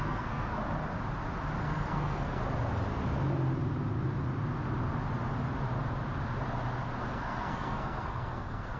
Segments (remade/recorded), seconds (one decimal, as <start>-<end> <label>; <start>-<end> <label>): 0.0-0.5 remade; 0.5-1.6 recorded; 1.6-2.4 remade; 2.4-7.0 recorded; 7.0-8.8 remade